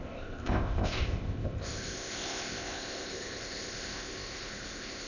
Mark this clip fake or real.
fake